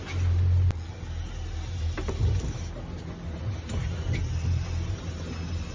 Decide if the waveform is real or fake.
real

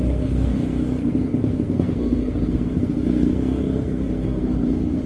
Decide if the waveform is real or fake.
fake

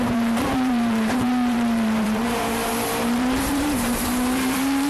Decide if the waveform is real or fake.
fake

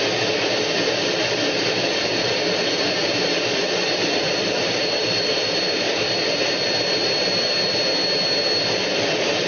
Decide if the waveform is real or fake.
real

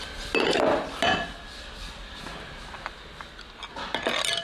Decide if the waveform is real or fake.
real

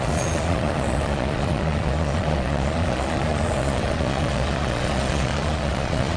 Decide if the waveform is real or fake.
fake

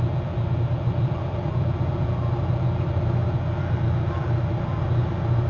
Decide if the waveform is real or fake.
real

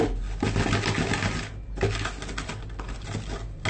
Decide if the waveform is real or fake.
real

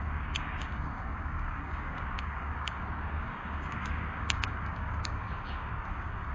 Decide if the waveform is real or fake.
fake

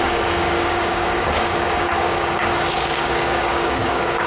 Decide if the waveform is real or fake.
fake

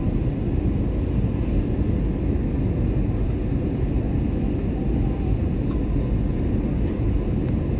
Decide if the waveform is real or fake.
real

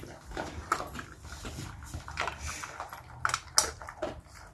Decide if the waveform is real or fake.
real